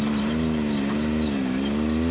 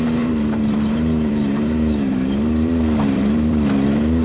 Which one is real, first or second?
first